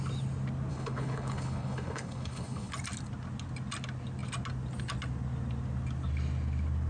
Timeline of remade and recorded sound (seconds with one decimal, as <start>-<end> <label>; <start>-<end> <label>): 0.0-0.7 recorded; 0.7-2.7 remade; 2.7-6.9 recorded